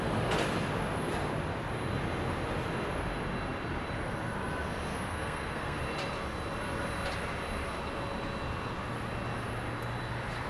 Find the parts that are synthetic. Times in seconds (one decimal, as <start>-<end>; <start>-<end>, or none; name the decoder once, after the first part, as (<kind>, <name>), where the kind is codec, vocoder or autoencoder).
5.1-5.8 (codec, SNAC)